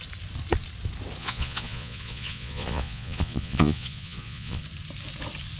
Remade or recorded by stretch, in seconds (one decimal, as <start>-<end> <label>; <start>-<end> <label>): 0.0-1.2 recorded; 1.2-4.6 remade; 4.6-5.6 recorded